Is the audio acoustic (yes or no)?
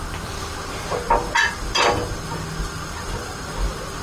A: yes